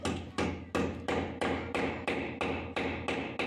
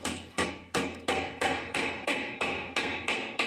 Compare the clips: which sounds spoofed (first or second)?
second